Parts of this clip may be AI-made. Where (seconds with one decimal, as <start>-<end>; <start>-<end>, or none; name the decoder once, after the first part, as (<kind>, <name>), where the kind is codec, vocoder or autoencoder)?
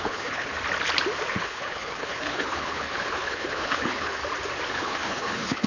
0.0-0.5 (codec, HILCodec); 1.3-4.2; 4.7-5.7